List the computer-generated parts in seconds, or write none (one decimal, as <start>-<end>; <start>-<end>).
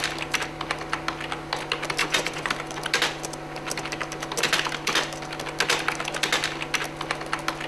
2.0-2.5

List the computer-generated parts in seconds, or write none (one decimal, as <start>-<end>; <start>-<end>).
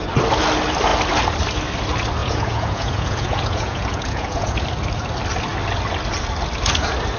2.2-4.6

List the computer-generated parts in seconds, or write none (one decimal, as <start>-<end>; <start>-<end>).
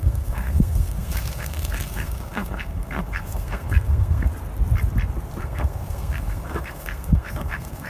0.0-4.3; 5.4-7.9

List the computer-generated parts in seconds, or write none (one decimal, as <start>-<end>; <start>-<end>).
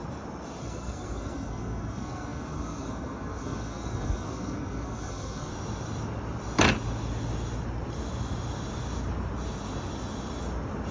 0.6-5.5